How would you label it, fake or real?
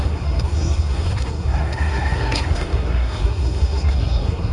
fake